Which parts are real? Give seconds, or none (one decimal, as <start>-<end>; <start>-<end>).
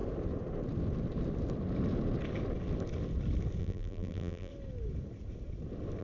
0.0-3.6; 4.5-6.0